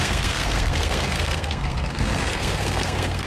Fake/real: fake